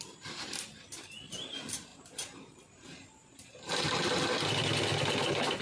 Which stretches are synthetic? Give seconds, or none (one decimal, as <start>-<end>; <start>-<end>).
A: none